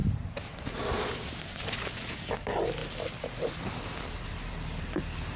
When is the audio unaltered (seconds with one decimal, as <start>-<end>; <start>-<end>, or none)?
0.0-5.4